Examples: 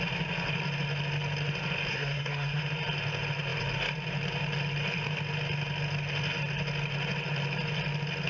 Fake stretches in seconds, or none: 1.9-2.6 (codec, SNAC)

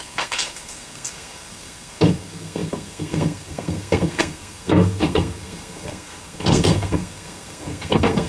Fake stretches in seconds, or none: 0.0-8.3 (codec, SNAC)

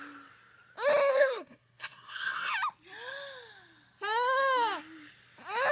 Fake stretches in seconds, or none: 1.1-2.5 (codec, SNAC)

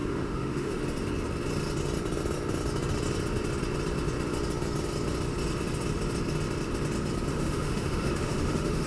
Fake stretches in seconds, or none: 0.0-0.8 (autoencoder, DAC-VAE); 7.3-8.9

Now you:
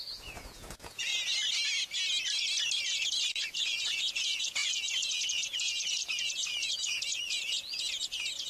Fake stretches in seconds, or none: 0.0-1.1 (vocoder, Vocos); 2.8-8.5